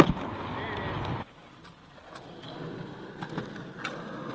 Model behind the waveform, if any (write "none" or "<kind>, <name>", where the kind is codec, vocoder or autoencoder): none